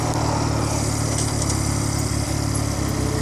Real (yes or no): yes